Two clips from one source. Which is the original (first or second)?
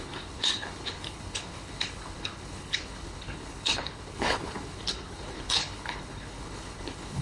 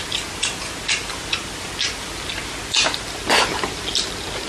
second